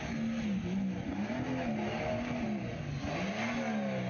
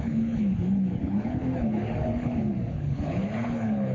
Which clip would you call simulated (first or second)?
second